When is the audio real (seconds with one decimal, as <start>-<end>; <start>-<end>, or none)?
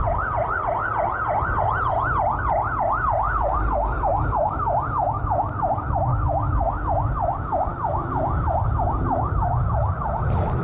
0.9-2.8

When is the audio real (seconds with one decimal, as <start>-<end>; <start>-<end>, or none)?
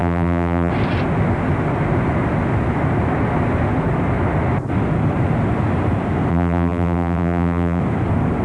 0.7-6.3; 7.8-8.4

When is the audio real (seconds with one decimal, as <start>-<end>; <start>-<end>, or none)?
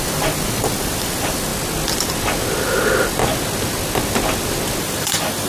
1.5-4.8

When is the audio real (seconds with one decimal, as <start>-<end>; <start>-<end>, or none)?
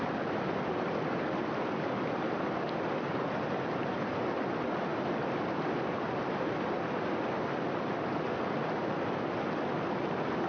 4.9-6.5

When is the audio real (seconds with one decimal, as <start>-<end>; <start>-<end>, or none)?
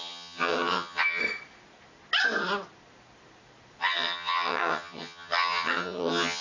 1.2-3.8